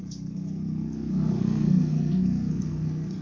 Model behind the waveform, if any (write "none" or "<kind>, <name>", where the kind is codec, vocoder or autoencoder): codec, SNAC